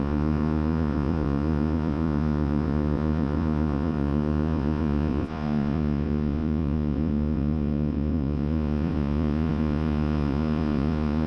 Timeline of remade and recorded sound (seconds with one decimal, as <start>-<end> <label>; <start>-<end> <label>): 0.0-11.3 remade